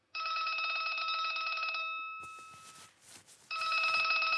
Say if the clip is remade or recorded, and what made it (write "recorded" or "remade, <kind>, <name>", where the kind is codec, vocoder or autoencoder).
recorded